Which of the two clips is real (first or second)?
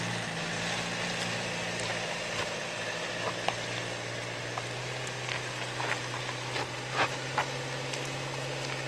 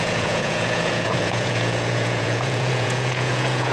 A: first